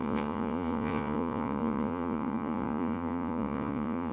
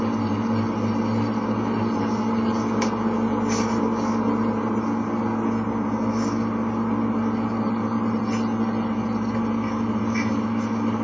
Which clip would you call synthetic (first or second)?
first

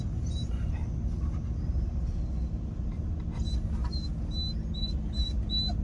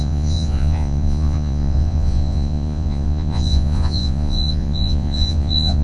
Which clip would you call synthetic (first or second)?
second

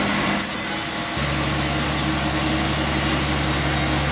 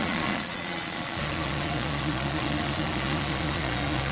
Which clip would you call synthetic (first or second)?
second